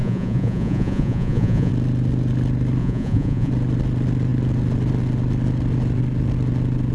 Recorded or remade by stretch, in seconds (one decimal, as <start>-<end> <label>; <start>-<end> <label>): 0.0-1.7 remade; 1.7-2.8 recorded; 2.8-3.5 remade; 3.5-6.9 recorded